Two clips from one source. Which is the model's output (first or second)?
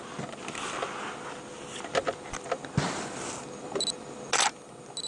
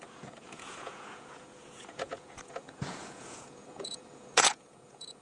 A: second